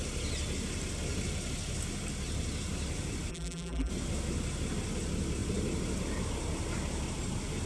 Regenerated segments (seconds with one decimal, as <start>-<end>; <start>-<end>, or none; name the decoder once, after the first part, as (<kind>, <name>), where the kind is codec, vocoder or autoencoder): 3.3-3.9 (vocoder, BigVGAN v2)